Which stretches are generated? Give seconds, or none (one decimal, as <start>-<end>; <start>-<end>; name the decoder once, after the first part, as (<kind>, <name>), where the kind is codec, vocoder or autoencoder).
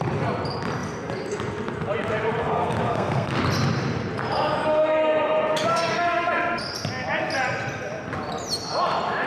2.4-3.4 (codec, SNAC); 5.7-6.3